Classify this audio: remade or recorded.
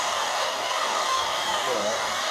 remade